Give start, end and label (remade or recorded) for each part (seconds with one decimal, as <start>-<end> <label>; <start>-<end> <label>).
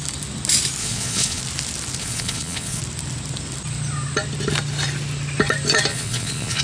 0.0-0.8 recorded; 0.8-1.4 remade; 1.4-2.0 recorded; 2.0-2.8 remade; 2.8-5.9 recorded; 5.9-6.6 remade